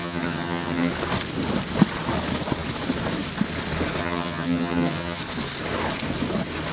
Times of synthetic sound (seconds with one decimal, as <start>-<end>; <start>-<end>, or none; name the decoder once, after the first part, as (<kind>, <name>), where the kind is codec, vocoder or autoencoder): 0.0-0.9 (vocoder, HiFi-GAN); 4.0-5.2